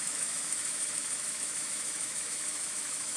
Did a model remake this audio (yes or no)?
yes